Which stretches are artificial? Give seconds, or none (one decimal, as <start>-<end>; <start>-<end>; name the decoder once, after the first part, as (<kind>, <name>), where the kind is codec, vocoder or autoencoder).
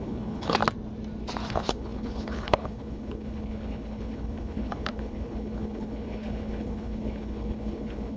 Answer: 0.0-0.6 (codec, HILCodec); 1.5-8.2